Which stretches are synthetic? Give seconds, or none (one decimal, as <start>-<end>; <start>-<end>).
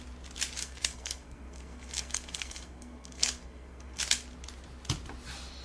0.6-4.0